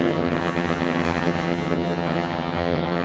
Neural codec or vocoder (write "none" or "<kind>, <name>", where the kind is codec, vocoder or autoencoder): vocoder, HiFi-GAN